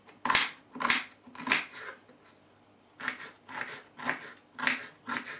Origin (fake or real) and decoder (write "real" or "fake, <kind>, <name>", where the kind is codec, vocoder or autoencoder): real